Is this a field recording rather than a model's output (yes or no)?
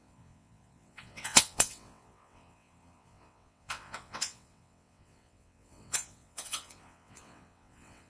no